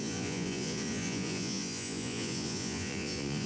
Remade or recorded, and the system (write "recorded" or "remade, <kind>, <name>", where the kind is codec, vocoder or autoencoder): remade, vocoder, Vocos